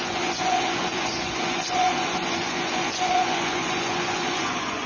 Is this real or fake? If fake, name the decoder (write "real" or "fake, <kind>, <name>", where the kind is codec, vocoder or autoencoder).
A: fake, vocoder, Vocos